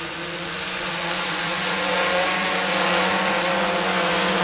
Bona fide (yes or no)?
no